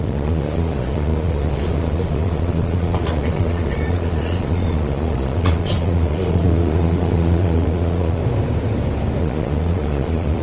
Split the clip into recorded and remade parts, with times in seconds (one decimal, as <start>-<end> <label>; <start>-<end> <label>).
0.0-8.2 remade; 8.2-9.2 recorded; 9.2-10.4 remade